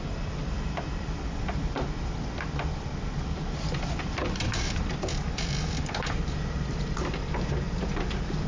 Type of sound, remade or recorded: remade